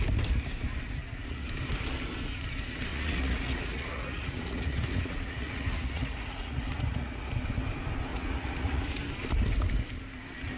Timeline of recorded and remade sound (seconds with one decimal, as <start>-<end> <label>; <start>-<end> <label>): 0.0-1.0 recorded; 1.0-1.5 remade; 1.5-2.9 recorded; 2.9-7.3 remade; 7.3-8.1 recorded; 8.1-9.0 remade; 9.0-10.6 recorded